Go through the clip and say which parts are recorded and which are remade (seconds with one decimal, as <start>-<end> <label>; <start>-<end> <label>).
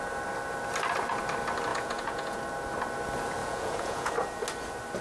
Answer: 0.0-1.7 recorded; 1.7-2.4 remade; 2.4-3.4 recorded; 3.4-4.1 remade; 4.1-5.0 recorded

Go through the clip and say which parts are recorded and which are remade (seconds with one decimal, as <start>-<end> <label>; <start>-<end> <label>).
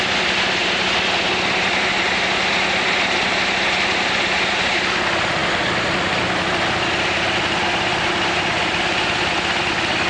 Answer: 0.0-10.1 recorded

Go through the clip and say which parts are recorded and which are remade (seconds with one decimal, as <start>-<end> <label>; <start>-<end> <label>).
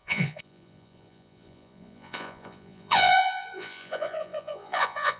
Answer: 0.0-5.2 remade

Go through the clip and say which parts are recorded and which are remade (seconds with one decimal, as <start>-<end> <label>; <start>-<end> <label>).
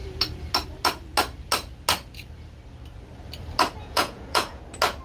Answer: 0.0-3.8 recorded; 3.8-4.6 remade; 4.6-5.0 recorded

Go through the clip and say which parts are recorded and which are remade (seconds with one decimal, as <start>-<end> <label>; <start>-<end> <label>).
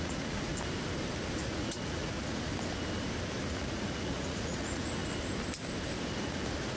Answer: 0.0-0.5 remade; 0.5-1.4 recorded; 1.4-2.5 remade; 2.5-3.5 recorded; 3.5-5.0 remade; 5.0-6.2 recorded; 6.2-6.8 remade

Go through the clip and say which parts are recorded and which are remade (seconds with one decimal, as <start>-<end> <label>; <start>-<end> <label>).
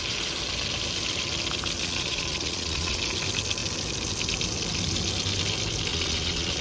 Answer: 0.0-1.8 recorded; 1.8-3.0 remade; 3.0-5.9 recorded; 5.9-6.6 remade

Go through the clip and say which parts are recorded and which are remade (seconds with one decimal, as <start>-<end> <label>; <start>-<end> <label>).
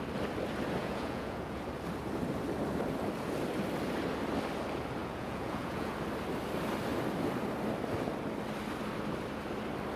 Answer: 0.0-0.8 recorded; 0.8-1.6 remade; 1.6-5.0 recorded; 5.0-5.9 remade; 5.9-10.0 recorded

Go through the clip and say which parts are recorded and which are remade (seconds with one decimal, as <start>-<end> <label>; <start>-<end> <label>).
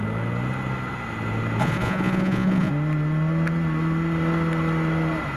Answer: 0.0-1.6 recorded; 1.6-2.7 remade; 2.7-5.4 recorded